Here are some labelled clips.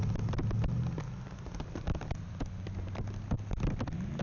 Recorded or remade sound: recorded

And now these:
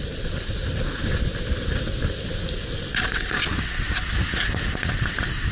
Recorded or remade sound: recorded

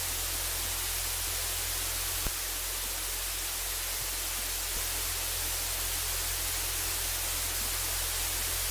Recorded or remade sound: recorded